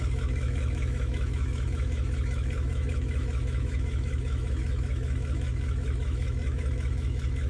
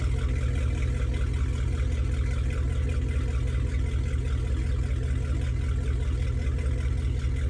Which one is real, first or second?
second